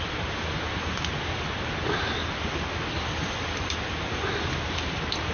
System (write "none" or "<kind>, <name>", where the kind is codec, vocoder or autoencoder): none